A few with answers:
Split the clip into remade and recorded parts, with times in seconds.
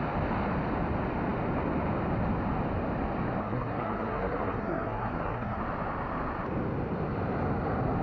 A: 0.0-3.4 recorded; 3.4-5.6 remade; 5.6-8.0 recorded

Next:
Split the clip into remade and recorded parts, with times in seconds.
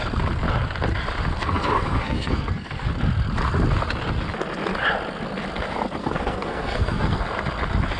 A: 0.0-1.4 recorded; 1.4-2.9 remade; 2.9-6.0 recorded; 6.0-7.2 remade; 7.2-8.0 recorded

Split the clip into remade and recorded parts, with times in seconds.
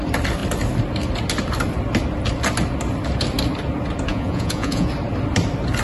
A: 0.0-4.1 recorded; 4.1-4.9 remade; 4.9-5.8 recorded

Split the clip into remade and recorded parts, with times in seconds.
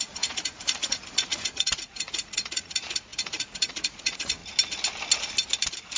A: 0.0-4.4 remade; 4.4-6.0 recorded